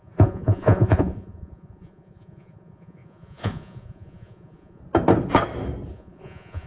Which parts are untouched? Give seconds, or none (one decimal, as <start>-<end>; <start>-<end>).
4.8-5.9